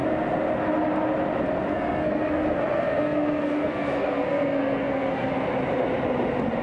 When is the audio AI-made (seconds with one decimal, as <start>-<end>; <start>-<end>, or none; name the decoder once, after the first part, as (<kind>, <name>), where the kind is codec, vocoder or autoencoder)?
1.7-5.3 (codec, SNAC)